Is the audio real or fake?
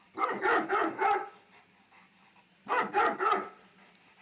real